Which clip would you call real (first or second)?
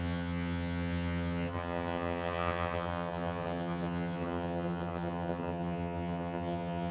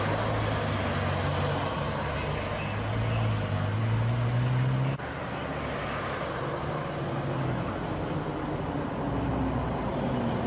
second